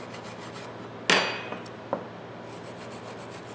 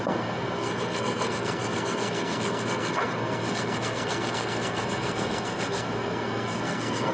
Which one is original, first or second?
first